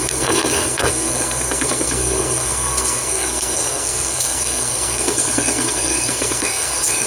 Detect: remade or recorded remade